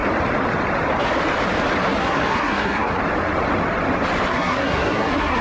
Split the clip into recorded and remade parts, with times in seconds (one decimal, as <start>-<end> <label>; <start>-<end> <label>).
0.0-2.0 recorded; 2.0-3.0 remade; 3.0-4.3 recorded; 4.3-5.4 remade